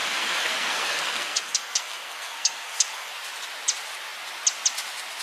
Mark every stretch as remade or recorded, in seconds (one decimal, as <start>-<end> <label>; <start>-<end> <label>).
0.0-3.1 remade; 3.1-5.2 recorded